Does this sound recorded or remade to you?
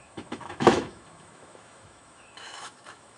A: remade